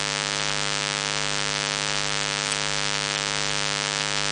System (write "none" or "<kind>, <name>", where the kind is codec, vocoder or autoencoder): none